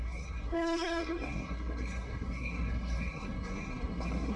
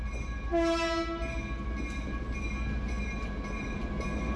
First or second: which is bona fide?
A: second